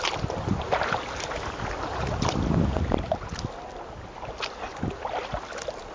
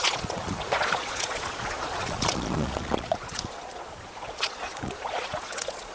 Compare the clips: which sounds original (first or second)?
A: first